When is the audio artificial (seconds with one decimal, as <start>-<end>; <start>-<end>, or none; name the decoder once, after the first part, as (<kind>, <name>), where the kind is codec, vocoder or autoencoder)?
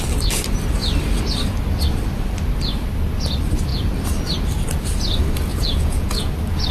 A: 5.5-6.3 (vocoder, Vocos)